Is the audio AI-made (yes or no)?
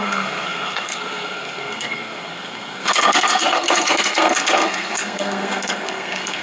yes